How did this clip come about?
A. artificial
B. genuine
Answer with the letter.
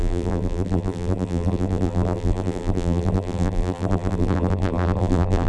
A